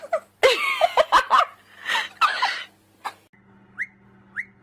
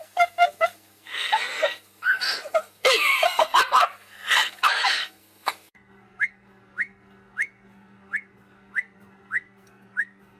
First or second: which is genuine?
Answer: first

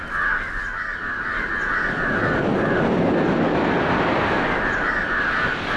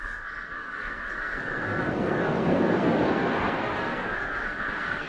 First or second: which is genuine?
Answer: first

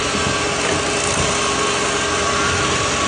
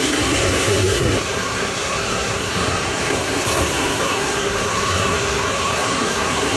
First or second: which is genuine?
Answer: first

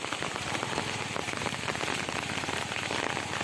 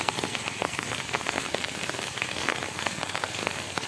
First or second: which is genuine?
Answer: first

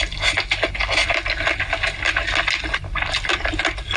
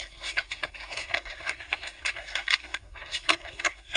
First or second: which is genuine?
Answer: first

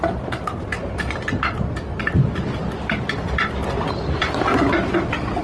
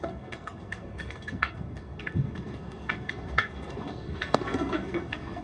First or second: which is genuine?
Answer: first